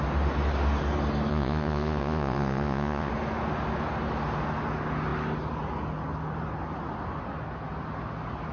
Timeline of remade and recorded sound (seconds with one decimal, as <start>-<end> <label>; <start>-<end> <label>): 0.0-1.3 recorded; 1.3-3.1 remade; 3.1-8.5 recorded

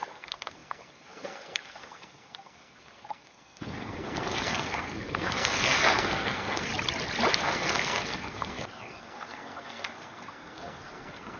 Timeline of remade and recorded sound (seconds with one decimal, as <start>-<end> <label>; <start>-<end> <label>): 0.0-6.7 remade; 6.7-7.3 recorded; 7.3-11.4 remade

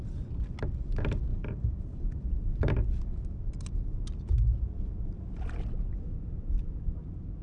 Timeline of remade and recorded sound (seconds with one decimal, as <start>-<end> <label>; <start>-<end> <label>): 0.0-1.3 recorded; 1.3-3.0 remade; 3.0-7.4 recorded

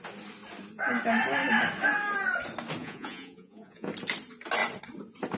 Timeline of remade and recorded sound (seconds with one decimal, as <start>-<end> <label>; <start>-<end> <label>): 0.0-2.8 recorded; 2.8-3.9 remade; 3.9-5.4 recorded

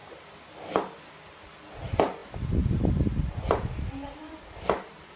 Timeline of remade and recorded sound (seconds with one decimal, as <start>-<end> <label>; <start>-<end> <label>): 0.0-5.2 recorded